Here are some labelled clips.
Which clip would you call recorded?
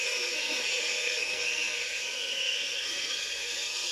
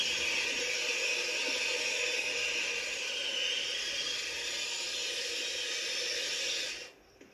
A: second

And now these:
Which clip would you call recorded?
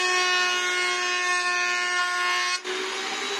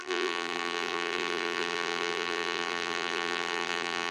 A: first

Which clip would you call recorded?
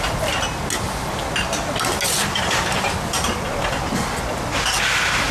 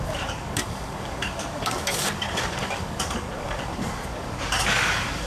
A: first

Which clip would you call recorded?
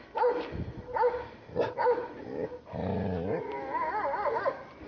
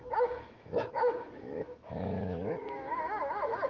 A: first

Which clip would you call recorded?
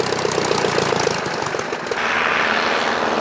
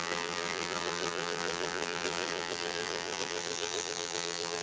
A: first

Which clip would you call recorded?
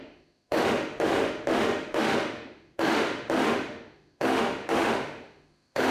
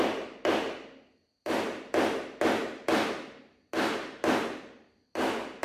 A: second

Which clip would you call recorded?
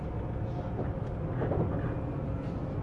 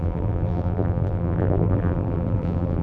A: first